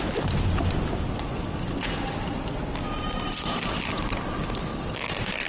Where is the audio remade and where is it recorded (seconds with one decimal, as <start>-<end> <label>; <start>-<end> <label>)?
0.0-5.5 recorded